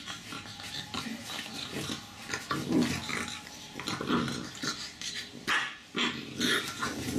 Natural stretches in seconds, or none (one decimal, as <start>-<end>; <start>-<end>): 0.0-7.2